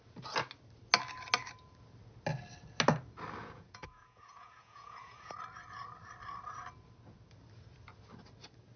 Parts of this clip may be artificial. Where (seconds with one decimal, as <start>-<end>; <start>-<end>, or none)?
3.4-5.3